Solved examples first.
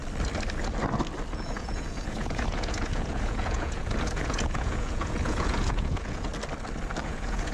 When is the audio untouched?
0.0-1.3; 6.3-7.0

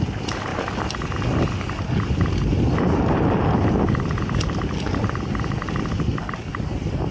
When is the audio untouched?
0.0-7.1